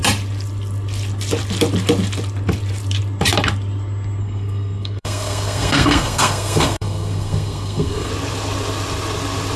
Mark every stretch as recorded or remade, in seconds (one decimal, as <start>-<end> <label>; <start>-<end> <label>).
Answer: 0.0-4.2 recorded; 4.2-8.1 remade; 8.1-9.6 recorded